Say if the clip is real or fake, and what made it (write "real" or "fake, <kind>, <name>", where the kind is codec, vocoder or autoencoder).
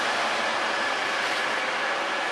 real